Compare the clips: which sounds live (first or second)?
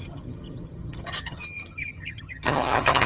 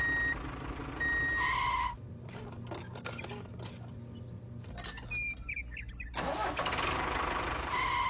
second